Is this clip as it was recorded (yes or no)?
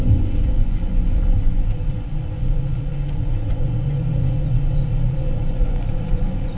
no